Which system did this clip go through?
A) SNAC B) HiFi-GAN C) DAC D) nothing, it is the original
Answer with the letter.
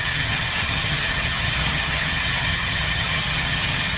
B